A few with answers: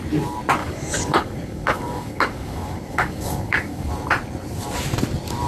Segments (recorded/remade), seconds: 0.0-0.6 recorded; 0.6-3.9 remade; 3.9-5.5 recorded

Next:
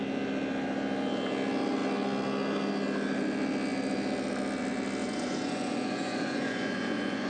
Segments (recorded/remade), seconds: 0.0-5.0 recorded; 5.0-7.3 remade

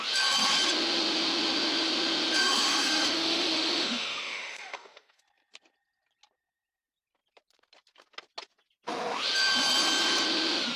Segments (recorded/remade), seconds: 0.0-2.4 recorded; 2.4-5.2 remade; 5.2-10.8 recorded

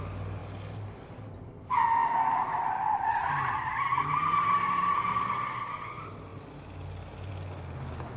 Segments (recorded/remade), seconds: 0.0-8.2 recorded

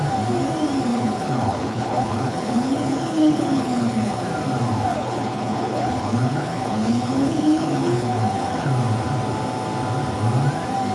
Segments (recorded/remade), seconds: 0.0-0.9 recorded; 0.9-4.2 remade; 4.2-4.9 recorded; 4.9-8.7 remade; 8.7-10.9 recorded

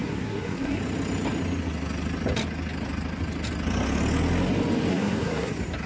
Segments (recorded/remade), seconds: 0.0-0.8 remade; 0.8-4.9 recorded; 4.9-5.5 remade; 5.5-5.9 recorded

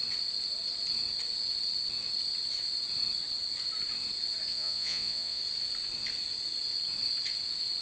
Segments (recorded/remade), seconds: 0.0-4.5 recorded; 4.5-5.4 remade; 5.4-7.8 recorded

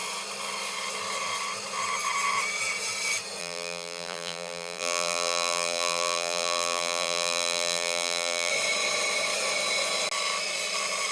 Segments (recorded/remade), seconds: 0.0-3.4 recorded; 3.4-8.5 remade; 8.5-11.1 recorded